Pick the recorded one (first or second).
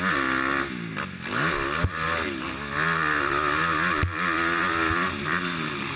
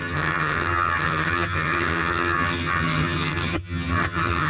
first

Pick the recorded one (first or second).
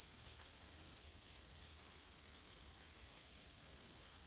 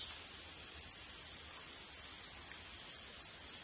second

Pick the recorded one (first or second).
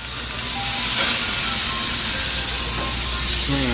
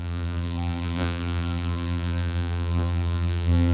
first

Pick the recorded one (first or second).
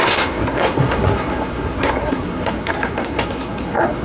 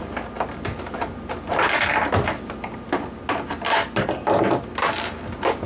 second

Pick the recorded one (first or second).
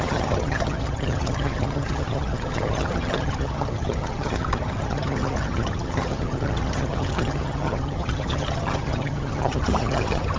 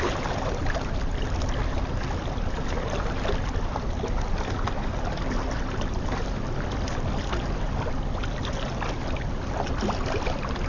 second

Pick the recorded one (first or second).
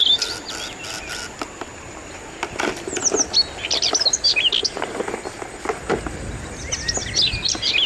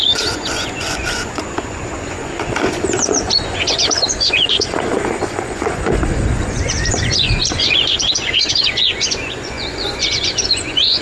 first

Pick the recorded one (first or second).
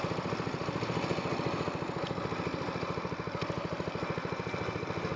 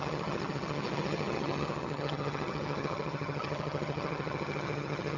first